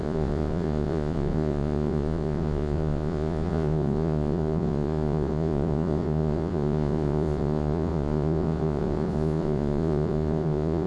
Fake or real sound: fake